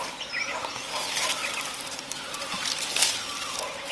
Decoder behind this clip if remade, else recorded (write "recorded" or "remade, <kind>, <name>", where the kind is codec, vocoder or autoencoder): recorded